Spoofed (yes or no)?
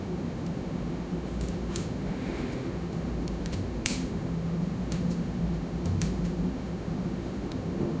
yes